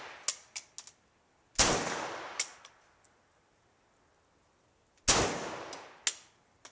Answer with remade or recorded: recorded